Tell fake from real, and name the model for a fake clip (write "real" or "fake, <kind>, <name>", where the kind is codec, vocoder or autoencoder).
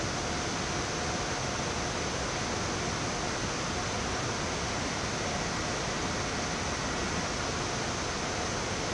real